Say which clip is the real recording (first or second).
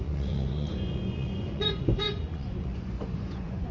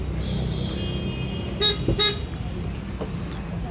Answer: second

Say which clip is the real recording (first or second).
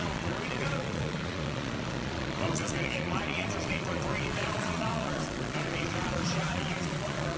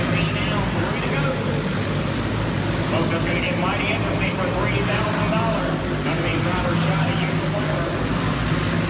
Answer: second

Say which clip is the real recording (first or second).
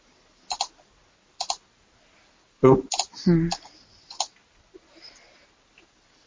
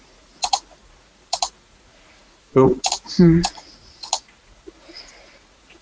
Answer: first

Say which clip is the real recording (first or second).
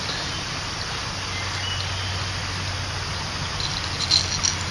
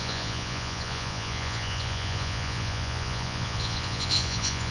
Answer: first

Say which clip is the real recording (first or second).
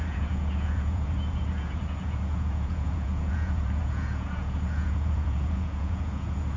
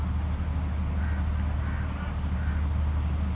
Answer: second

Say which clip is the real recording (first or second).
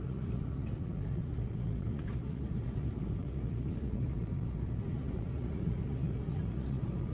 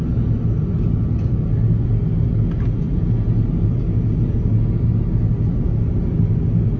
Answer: second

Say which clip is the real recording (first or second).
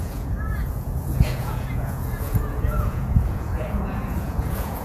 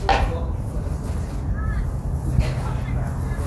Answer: second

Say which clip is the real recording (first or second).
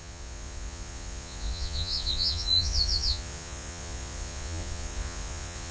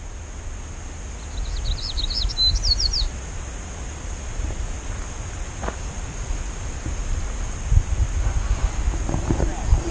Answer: second